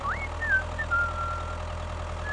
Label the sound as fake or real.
real